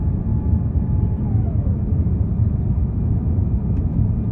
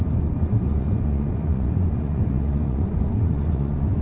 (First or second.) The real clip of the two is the first